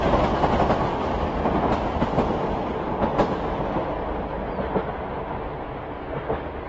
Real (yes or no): yes